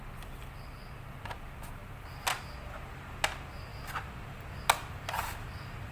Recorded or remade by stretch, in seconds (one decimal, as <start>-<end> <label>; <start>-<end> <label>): 0.0-5.9 recorded